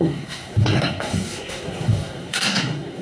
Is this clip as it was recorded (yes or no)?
no